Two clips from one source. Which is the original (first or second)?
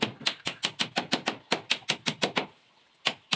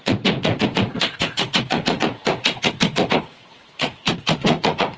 first